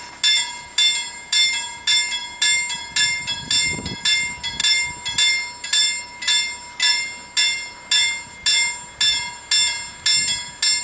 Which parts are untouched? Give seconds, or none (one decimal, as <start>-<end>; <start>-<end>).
0.0-10.8